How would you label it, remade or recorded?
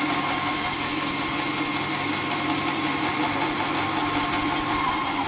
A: recorded